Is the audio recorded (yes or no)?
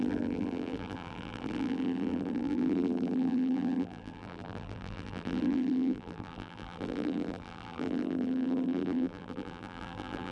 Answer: no